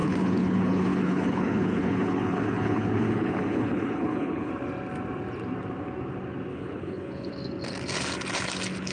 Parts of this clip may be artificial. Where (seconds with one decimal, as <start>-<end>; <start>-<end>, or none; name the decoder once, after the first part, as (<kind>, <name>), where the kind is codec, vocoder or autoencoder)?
0.0-4.5 (codec, HILCodec); 6.5-7.3